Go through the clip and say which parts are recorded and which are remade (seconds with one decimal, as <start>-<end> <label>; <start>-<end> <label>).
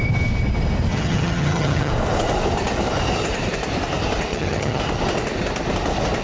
0.0-0.9 recorded; 0.9-1.9 remade; 1.9-4.3 recorded; 4.3-4.8 remade; 4.8-6.2 recorded